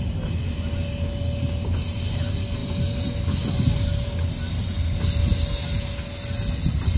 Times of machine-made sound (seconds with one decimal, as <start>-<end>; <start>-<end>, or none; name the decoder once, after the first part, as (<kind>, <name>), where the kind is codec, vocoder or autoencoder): none